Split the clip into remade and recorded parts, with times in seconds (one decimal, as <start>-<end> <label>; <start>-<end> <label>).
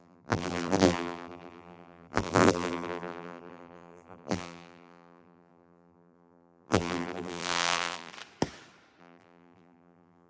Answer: 0.0-8.1 remade; 8.1-9.0 recorded; 9.0-10.3 remade